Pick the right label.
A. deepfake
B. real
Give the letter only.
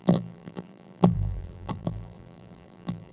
A